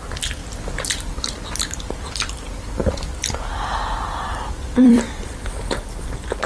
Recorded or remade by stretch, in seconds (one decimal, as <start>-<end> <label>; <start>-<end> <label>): 0.0-0.4 remade; 0.4-1.8 recorded; 1.8-6.5 remade